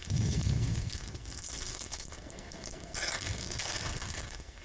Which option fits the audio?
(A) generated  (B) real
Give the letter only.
A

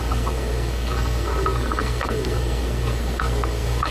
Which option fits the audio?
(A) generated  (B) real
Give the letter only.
A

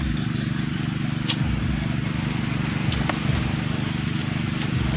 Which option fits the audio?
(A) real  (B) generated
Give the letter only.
A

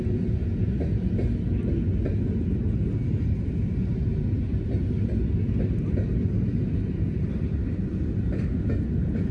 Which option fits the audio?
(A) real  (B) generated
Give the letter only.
A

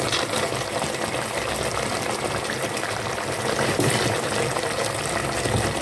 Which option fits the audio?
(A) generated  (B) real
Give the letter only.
B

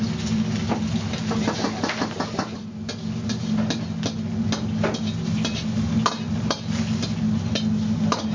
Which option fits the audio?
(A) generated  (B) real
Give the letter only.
B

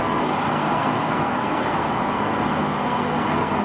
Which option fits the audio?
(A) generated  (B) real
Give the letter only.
A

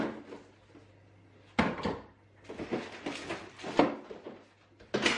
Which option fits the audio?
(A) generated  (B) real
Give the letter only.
B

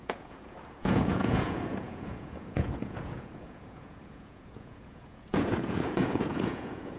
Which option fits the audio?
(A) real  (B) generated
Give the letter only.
B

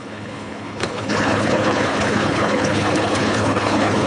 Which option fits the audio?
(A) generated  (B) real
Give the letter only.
A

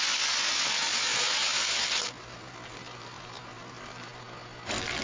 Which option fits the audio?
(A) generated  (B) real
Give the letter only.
B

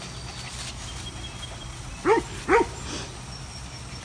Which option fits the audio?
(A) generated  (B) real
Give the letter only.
B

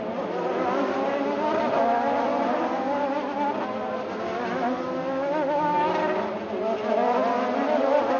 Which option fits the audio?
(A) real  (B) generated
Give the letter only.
A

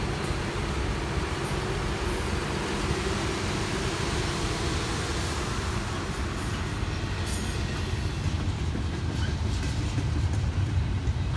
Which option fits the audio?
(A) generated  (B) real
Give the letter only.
B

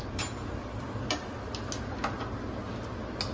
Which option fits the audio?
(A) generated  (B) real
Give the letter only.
B